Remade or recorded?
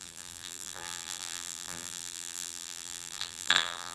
remade